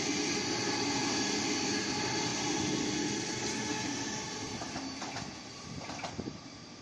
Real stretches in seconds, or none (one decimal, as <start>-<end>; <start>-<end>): 0.0-6.8